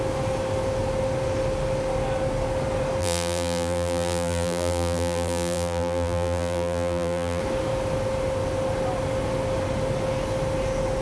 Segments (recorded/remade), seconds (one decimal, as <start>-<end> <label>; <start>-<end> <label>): 0.0-3.0 recorded; 3.0-7.4 remade; 7.4-11.0 recorded